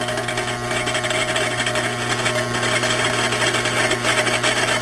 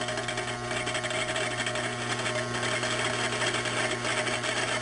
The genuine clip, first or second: first